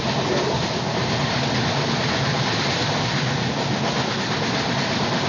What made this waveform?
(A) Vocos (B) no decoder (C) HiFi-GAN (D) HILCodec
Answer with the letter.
B